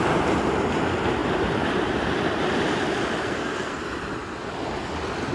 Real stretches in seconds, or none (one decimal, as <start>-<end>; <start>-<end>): 0.0-3.2; 3.8-5.3